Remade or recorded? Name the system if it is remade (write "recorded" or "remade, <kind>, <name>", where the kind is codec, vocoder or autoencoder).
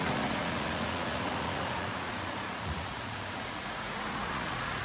remade, vocoder, Vocos